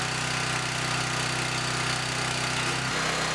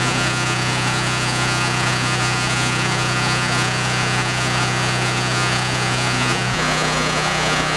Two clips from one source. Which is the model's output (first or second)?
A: second